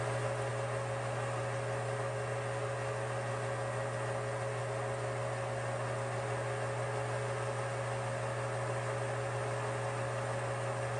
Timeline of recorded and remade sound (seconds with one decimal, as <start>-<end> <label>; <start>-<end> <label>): 0.0-11.0 recorded